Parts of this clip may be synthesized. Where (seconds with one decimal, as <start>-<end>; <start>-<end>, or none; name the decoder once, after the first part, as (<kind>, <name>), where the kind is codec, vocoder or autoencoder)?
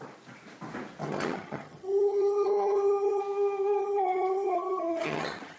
1.0-3.2 (vocoder, HiFi-GAN); 3.8-5.6